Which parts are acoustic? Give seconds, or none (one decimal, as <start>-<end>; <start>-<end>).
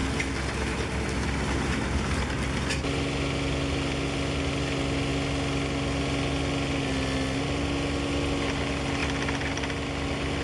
0.0-10.4